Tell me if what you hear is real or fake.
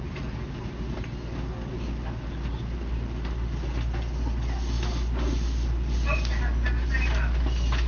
real